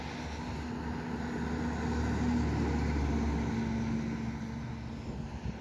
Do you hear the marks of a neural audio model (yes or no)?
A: no